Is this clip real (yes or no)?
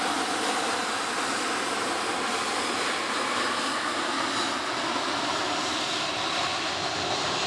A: yes